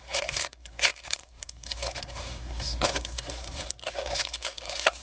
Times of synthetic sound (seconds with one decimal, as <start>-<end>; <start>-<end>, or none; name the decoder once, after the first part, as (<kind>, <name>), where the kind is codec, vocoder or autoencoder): 0.0-5.0 (codec, SNAC)